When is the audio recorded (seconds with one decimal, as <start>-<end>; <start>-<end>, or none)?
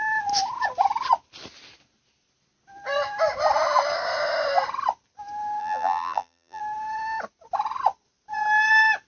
0.0-5.6; 6.6-9.1